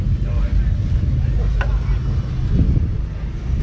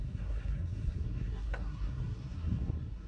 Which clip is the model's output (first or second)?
second